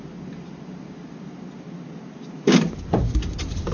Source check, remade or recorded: recorded